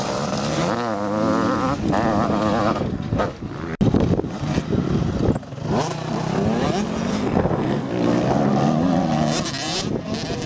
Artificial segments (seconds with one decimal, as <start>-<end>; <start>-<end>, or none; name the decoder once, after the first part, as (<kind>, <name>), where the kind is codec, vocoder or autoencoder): 7.1-7.8 (codec, SNAC)